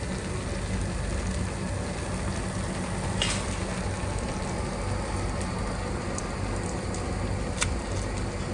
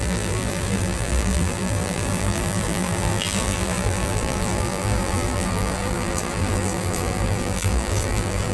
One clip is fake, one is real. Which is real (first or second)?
first